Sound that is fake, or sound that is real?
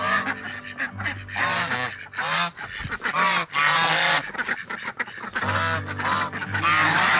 real